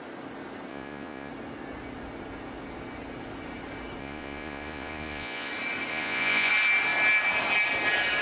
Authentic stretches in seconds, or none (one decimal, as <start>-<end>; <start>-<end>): 0.0-0.7; 1.3-4.0; 5.5-5.9; 6.5-8.2